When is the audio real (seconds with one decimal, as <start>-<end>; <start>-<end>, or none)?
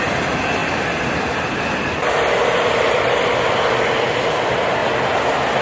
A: 0.0-5.6